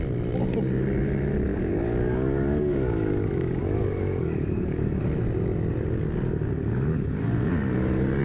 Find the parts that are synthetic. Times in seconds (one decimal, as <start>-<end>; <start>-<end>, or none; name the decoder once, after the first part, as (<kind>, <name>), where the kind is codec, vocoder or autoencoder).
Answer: 1.5-5.0 (codec, DAC); 6.9-7.5